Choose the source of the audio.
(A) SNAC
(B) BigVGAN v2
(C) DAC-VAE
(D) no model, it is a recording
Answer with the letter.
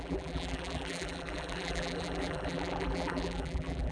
B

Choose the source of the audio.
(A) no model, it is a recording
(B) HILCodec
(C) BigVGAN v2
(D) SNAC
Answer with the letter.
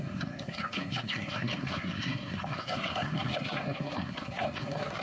D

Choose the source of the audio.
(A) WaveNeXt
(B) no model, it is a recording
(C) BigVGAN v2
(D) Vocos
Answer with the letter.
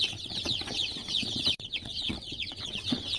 A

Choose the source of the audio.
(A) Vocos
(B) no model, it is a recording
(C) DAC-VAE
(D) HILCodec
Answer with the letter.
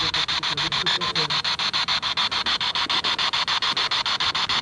B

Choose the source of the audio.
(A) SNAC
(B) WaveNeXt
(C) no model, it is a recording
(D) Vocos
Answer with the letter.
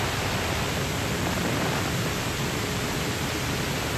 C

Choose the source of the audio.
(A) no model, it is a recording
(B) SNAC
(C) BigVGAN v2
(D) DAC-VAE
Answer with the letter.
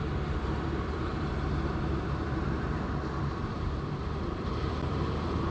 C